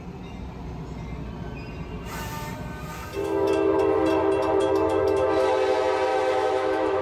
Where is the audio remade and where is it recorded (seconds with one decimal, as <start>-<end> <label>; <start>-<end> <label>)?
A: 0.0-3.2 recorded; 3.2-3.8 remade; 3.8-4.6 recorded; 4.6-5.5 remade; 5.5-6.1 recorded; 6.1-7.0 remade